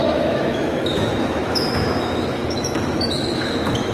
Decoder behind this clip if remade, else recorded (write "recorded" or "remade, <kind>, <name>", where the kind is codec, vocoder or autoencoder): remade, autoencoder, DAC-VAE